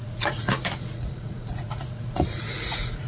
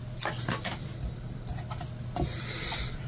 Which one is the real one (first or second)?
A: second